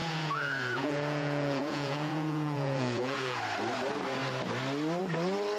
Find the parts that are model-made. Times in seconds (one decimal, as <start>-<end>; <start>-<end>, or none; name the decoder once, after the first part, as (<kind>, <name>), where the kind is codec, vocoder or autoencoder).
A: 0.0-3.4 (vocoder, Vocos)

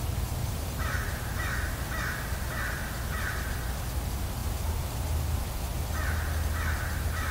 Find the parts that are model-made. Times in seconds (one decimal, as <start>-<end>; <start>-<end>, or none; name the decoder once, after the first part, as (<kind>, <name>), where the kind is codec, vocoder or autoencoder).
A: 0.4-1.7 (vocoder, BigVGAN v2); 4.4-5.4

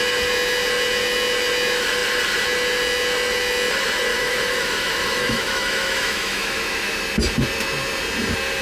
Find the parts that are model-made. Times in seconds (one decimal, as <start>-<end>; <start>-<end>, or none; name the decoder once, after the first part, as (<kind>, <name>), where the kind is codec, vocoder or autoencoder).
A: 4.1-7.0 (autoencoder, DAC-VAE)

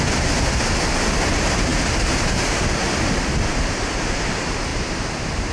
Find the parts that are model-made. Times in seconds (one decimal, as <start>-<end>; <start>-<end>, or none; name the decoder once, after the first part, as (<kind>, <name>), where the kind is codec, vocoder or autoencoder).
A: 4.7-5.5 (vocoder, BigVGAN v2)

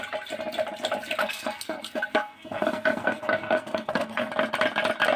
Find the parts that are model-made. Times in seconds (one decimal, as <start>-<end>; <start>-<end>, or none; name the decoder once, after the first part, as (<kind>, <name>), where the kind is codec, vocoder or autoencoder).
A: 1.2-4.3 (codec, SNAC)

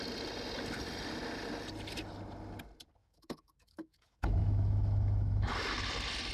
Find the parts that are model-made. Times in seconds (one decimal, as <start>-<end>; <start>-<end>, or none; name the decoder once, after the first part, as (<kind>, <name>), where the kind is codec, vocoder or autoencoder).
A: 3.0-5.5 (autoencoder, DAC-VAE)

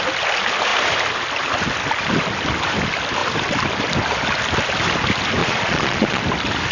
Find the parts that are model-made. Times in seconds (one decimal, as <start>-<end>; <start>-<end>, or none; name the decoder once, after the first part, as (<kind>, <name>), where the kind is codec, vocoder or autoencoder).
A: 5.4-6.2 (vocoder, Vocos)